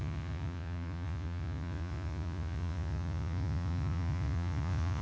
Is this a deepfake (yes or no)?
yes